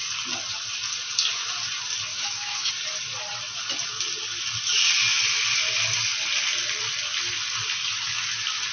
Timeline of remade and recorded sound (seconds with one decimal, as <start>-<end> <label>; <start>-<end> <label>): 0.0-2.1 recorded; 2.1-2.7 remade; 2.7-8.7 recorded